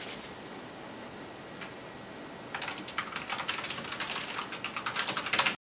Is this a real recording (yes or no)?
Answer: yes